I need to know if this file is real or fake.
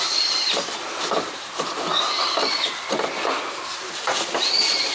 fake